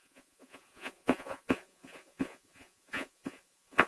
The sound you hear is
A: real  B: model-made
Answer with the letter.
B